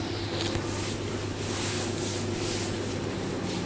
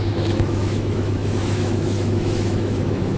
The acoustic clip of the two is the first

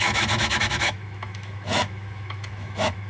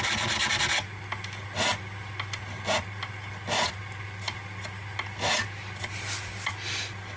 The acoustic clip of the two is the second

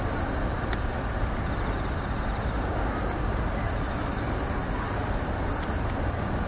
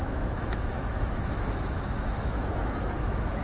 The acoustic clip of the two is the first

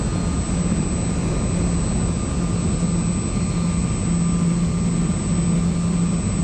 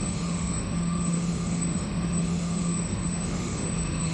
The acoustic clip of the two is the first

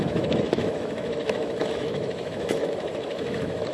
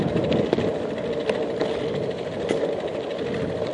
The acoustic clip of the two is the second